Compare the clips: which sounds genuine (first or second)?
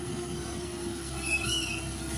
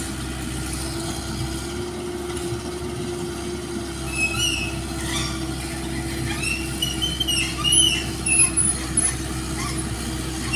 second